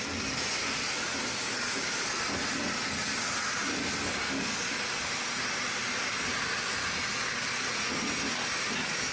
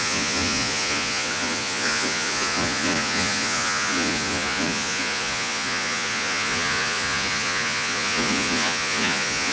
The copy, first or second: second